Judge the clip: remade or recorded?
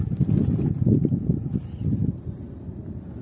recorded